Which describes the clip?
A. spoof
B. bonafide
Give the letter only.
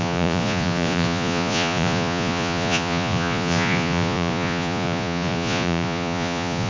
A